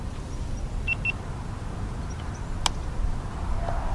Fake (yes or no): no